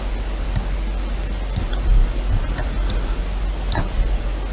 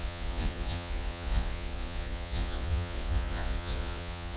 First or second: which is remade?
second